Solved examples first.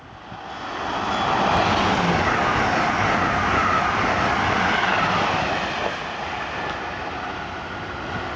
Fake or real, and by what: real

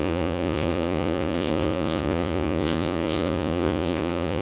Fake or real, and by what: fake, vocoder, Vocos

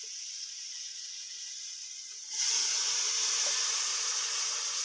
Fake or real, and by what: fake, vocoder, Vocos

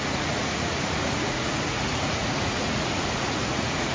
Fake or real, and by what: fake, vocoder, Vocos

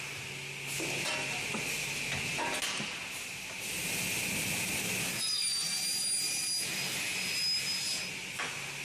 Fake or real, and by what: real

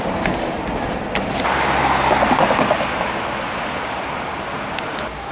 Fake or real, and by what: real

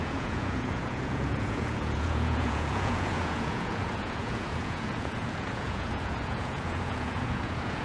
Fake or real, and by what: fake, vocoder, Vocos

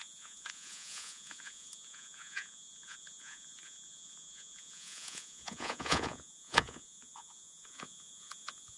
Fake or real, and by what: fake, vocoder, Vocos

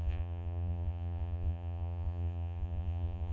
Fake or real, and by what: fake, vocoder, Vocos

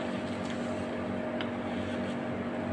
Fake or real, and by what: real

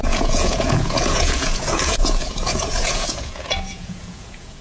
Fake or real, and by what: fake, vocoder, Vocos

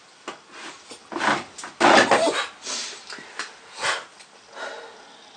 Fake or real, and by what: real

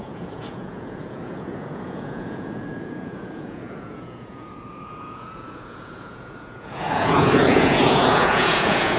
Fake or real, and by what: fake, vocoder, Vocos